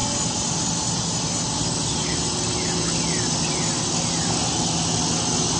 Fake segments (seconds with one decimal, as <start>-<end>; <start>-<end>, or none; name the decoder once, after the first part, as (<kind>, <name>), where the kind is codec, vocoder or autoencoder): none